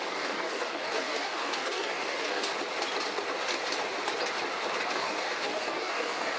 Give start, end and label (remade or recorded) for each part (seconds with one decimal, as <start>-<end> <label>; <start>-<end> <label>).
0.0-2.5 remade; 2.5-4.9 recorded; 4.9-6.4 remade